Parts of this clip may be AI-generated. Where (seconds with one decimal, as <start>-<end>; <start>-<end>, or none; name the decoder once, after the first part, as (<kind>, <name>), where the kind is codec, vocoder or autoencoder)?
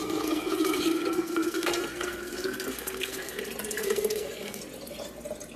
0.0-3.4 (codec, SNAC); 3.8-4.6